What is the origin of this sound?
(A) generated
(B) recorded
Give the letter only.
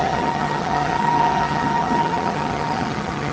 A